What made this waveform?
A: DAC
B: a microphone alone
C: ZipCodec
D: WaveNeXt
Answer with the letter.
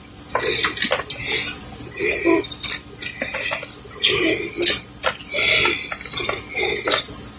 B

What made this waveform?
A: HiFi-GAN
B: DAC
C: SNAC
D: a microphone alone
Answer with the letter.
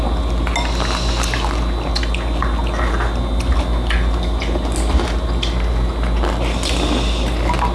D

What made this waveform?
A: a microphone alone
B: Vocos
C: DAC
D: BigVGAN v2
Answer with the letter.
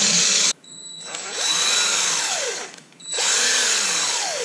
C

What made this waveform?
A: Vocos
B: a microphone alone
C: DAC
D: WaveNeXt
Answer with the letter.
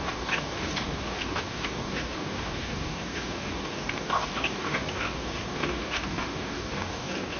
C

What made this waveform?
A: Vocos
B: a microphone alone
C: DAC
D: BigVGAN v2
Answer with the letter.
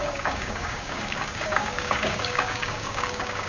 C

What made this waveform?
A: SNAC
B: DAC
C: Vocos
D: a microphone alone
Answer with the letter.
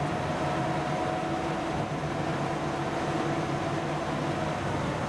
D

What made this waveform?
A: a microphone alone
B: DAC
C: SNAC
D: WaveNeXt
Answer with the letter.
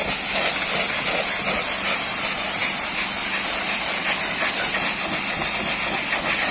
A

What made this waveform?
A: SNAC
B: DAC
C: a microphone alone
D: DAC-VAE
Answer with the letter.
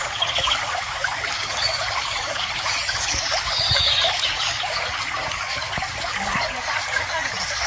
B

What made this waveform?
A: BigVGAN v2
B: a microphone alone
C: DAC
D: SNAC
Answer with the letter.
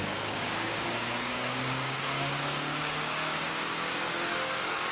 C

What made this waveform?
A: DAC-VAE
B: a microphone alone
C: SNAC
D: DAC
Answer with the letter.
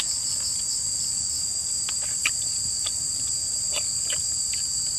B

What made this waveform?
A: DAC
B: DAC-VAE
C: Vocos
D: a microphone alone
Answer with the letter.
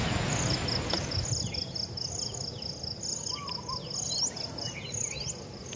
D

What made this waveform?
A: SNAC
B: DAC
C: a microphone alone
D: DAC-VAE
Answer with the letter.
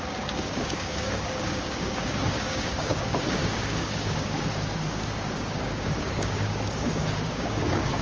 B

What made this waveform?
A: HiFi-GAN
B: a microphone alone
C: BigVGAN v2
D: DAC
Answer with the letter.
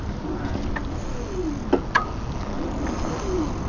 B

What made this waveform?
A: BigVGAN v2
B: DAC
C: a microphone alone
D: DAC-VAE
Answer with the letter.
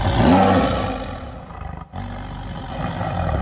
C